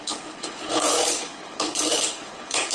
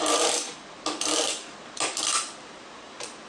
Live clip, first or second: second